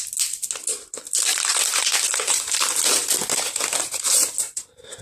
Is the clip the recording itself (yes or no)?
yes